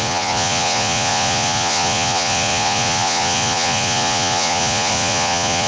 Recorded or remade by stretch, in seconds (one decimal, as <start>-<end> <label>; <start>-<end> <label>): 0.0-5.7 remade